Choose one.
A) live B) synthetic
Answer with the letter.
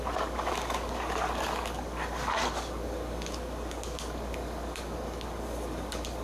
B